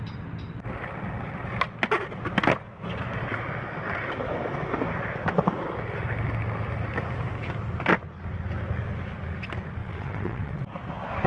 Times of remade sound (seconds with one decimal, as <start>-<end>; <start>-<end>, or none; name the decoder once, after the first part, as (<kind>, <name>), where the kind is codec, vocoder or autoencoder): 9.8-10.6 (vocoder, WaveNeXt)